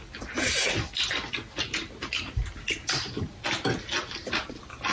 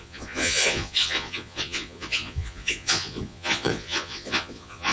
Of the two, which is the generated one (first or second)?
second